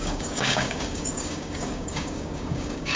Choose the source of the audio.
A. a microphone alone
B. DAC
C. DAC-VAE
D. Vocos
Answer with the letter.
B